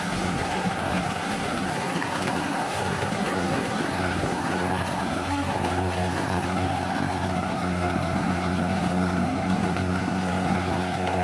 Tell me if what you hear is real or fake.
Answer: fake